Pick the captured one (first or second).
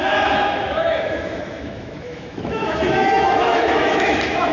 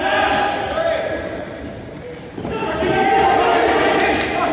second